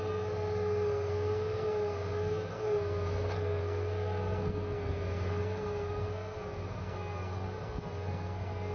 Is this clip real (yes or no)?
no